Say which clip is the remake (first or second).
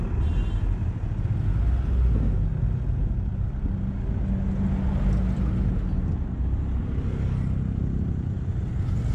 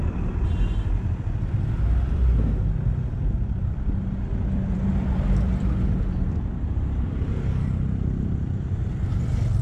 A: second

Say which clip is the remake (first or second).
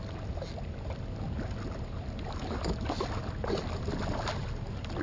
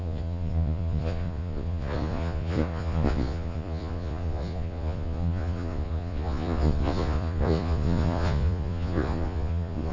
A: second